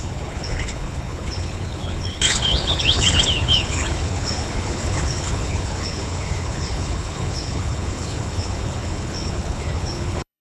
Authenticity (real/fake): fake